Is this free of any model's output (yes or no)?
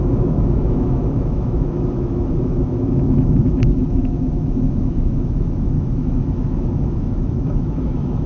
no